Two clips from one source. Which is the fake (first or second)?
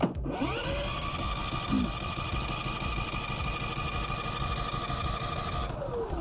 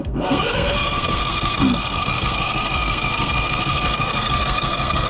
second